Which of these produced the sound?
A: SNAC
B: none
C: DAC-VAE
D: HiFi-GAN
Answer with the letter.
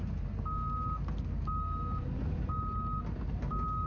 B